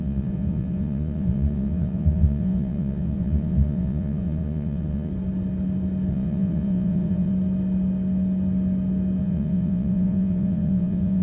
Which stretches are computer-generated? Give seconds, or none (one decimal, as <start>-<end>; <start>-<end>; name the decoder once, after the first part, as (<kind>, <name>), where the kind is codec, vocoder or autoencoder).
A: 0.0-5.1 (vocoder, Vocos); 6.1-7.3; 9.2-11.2